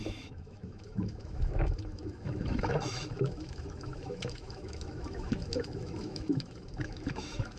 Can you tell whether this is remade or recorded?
remade